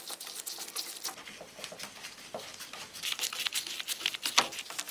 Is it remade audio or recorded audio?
recorded